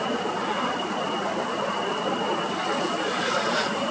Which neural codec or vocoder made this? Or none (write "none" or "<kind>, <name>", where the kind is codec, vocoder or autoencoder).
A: none